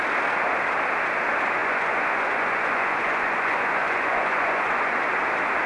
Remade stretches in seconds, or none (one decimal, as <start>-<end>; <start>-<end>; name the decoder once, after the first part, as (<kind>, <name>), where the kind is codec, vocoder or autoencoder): 1.6-5.0 (vocoder, Vocos)